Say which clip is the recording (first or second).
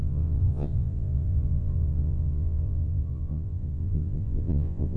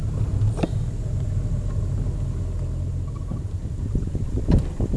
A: second